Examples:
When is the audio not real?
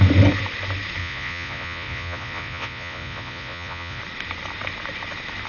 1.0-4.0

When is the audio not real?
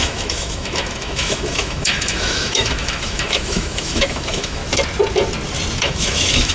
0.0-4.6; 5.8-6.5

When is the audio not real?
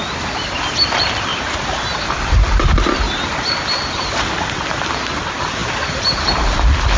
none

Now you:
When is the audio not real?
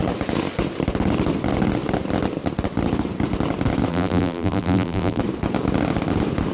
3.9-5.2